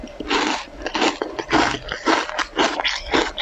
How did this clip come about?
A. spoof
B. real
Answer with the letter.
B